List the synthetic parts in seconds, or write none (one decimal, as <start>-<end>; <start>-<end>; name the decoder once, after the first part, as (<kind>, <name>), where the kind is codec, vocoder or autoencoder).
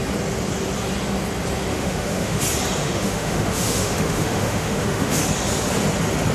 1.7-2.4 (autoencoder, DAC-VAE); 2.8-5.2